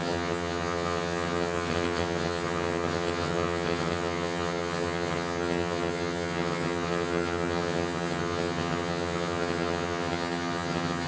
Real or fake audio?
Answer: fake